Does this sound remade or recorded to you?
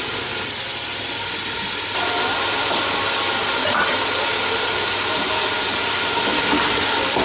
recorded